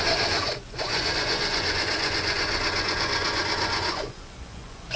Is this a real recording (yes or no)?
no